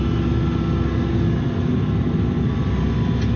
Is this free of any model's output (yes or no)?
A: yes